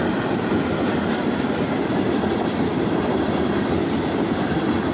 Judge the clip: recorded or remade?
remade